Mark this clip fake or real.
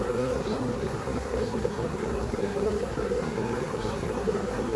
fake